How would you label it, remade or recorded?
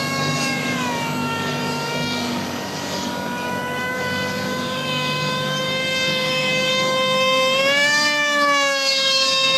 remade